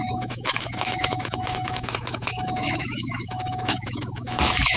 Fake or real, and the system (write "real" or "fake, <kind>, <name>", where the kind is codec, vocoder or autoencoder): fake, autoencoder, DAC-VAE